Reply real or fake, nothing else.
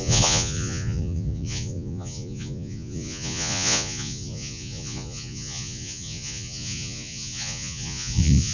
fake